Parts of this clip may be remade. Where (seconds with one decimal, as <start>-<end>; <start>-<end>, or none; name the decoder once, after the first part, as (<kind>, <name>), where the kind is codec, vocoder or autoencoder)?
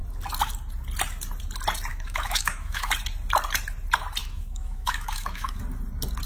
1.9-2.9 (autoencoder, DAC-VAE); 4.2-5.6